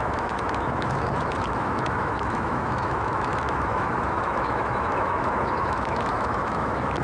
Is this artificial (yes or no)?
yes